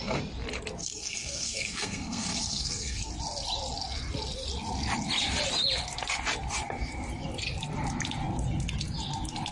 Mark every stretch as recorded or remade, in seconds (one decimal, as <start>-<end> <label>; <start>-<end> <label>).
0.0-0.8 recorded; 0.8-3.1 remade; 3.1-9.5 recorded